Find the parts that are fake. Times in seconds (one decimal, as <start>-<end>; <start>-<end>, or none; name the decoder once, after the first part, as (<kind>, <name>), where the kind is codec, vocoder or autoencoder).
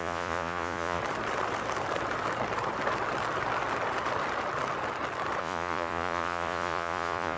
0.0-1.0 (vocoder, Vocos); 5.4-7.4